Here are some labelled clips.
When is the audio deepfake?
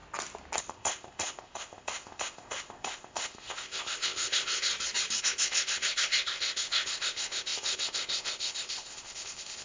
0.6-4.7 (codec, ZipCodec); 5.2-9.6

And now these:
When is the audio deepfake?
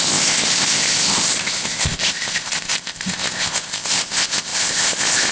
0.0-5.3 (codec, ZipCodec)